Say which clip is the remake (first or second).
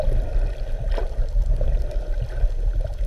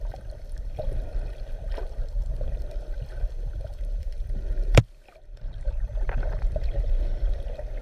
second